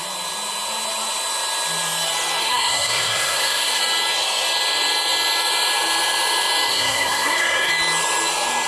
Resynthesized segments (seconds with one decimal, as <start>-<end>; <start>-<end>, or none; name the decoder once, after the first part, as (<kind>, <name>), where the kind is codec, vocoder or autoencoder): 2.4-3.8 (codec, SNAC); 6.7-7.7